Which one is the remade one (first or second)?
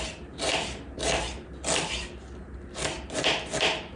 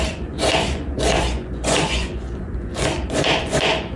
second